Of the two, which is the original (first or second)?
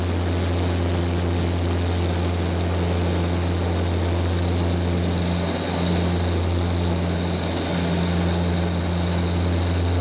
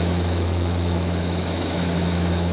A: first